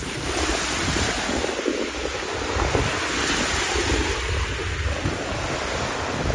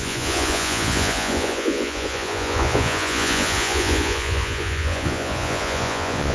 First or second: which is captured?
first